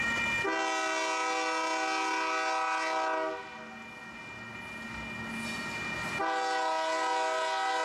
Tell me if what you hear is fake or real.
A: real